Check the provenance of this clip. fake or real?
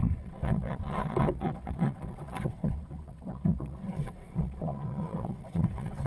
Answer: fake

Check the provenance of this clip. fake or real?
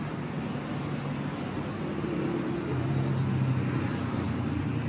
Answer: real